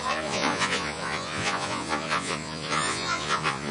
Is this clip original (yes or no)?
no